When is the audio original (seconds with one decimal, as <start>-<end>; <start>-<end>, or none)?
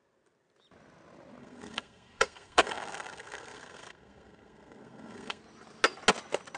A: 0.0-1.4; 5.4-6.6